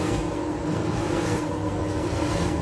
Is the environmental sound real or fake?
fake